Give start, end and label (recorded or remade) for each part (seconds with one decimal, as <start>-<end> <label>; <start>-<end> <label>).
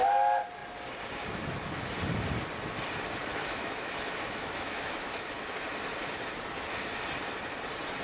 0.0-3.3 recorded; 3.3-5.3 remade; 5.3-8.0 recorded